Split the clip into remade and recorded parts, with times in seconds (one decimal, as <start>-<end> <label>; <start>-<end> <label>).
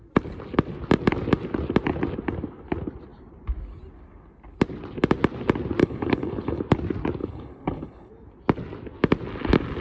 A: 0.0-5.8 recorded; 5.8-6.6 remade; 6.6-7.2 recorded; 7.2-8.1 remade; 8.1-9.8 recorded